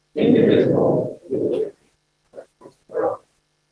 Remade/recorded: recorded